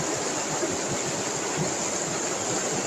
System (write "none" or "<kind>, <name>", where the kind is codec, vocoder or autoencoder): none